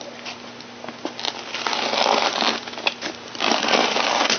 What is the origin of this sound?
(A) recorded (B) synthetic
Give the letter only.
A